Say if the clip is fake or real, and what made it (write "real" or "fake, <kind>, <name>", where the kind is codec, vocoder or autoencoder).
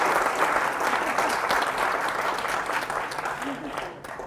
real